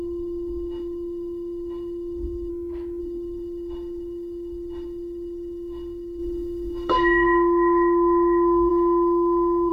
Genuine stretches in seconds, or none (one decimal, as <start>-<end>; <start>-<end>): 2.5-3.0